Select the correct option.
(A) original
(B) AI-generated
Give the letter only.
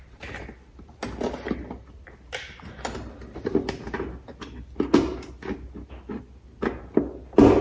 A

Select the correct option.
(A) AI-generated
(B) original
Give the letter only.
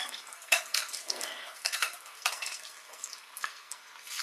A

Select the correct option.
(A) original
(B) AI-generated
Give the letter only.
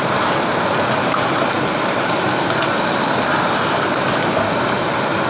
A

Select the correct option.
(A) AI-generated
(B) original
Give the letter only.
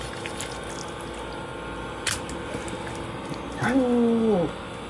B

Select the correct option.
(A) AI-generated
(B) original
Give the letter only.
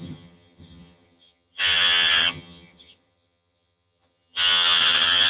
A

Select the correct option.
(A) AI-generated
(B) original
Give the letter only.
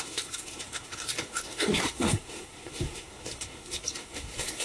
A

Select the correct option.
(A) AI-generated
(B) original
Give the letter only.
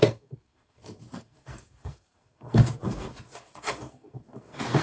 A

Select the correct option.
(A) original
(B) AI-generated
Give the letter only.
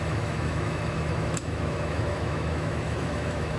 B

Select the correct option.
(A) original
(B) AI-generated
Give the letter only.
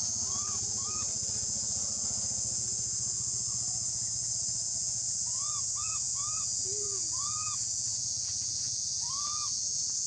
B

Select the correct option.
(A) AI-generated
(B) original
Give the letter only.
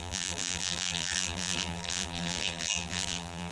A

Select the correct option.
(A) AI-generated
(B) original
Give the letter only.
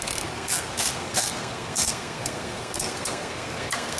A